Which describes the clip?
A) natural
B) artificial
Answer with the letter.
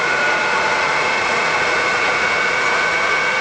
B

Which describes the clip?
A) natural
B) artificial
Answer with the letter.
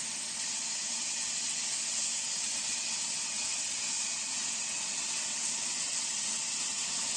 B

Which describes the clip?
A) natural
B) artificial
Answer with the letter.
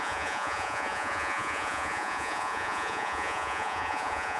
B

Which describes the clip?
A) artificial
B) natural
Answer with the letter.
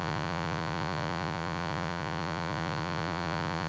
A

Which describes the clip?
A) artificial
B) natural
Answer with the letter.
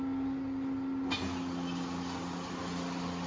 B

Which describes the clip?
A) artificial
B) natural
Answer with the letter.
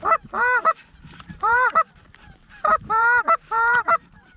A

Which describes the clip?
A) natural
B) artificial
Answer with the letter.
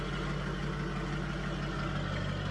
A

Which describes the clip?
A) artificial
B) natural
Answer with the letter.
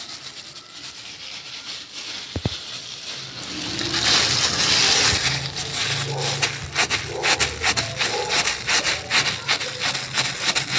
B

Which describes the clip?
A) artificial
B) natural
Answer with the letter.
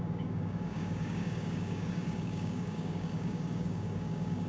A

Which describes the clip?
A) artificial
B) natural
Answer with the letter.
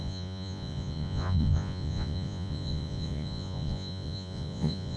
A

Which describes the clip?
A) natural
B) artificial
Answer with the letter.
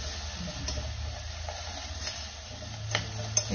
A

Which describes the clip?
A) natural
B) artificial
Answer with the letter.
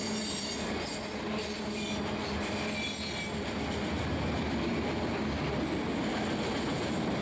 A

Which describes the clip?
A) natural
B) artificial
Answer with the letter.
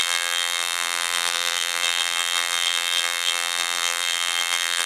B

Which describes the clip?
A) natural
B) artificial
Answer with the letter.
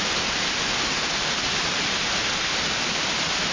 A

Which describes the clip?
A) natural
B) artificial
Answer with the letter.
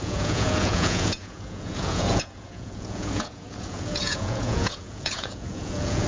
B